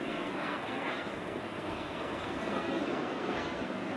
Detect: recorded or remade remade